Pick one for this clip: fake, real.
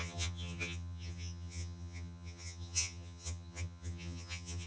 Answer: fake